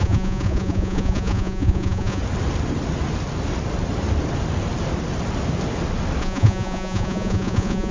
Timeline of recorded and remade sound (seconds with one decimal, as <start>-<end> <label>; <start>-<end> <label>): 0.0-2.2 remade; 2.2-6.2 recorded; 6.2-7.9 remade

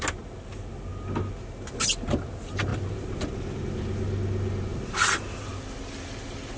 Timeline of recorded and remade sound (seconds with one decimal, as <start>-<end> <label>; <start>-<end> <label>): 0.0-6.6 recorded

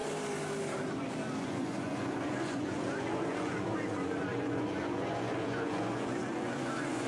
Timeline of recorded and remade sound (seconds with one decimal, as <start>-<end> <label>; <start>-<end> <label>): 0.0-1.4 recorded; 1.4-7.1 remade

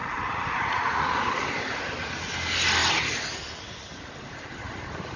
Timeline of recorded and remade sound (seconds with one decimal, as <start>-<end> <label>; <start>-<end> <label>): 0.0-1.2 remade; 1.2-5.2 recorded

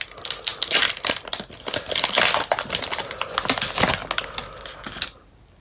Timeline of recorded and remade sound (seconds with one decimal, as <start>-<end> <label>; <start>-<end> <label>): 0.0-5.6 recorded